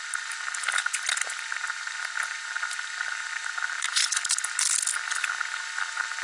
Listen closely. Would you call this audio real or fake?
real